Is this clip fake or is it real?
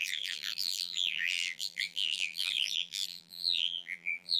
fake